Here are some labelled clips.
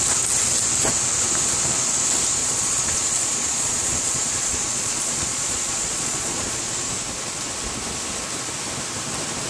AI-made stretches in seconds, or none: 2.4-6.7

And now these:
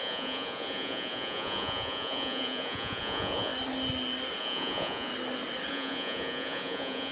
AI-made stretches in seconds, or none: 0.0-3.5; 4.4-5.1; 5.7-7.1

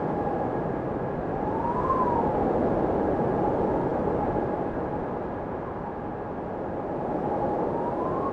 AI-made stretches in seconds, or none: none

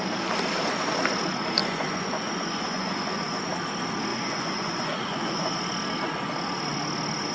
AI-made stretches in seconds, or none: 1.6-3.4; 4.1-5.5

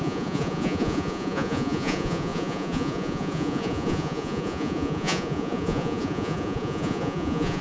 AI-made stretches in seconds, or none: 0.0-7.6

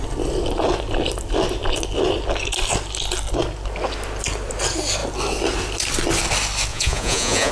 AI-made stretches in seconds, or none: 6.7-7.5

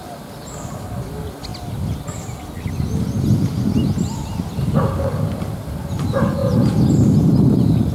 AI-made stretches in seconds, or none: none